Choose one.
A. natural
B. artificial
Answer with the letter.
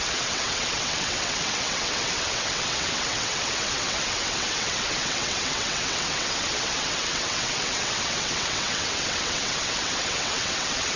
B